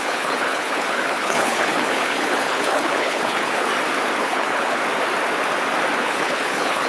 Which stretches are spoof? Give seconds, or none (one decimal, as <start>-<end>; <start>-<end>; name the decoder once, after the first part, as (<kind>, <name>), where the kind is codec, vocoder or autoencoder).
0.0-3.7 (codec, HILCodec); 4.2-4.8; 6.0-6.9